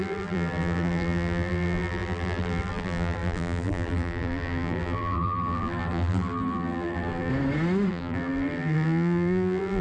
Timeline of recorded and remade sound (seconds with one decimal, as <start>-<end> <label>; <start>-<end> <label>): 0.0-7.3 remade; 7.3-7.9 recorded; 7.9-9.8 remade